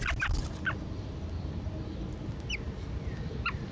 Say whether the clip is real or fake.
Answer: real